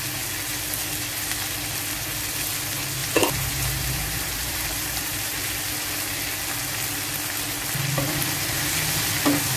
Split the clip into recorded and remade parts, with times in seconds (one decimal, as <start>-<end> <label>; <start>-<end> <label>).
0.0-3.0 recorded; 3.0-5.2 remade; 5.2-9.6 recorded